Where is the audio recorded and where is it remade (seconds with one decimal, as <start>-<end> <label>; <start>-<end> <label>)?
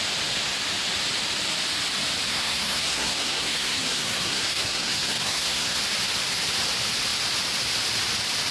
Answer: 0.0-2.3 recorded; 2.3-5.8 remade; 5.8-8.5 recorded